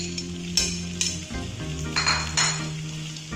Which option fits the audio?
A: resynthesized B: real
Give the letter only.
B